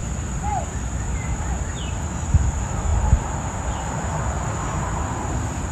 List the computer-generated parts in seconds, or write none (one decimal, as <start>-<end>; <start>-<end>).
none